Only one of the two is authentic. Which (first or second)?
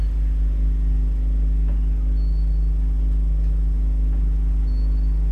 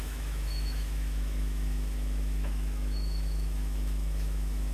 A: first